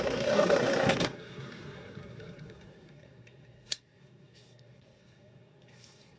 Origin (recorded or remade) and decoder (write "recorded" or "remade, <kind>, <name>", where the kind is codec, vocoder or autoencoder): remade, codec, SNAC